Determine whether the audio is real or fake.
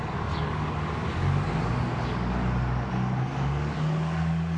fake